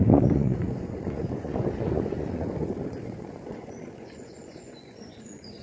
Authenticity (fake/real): fake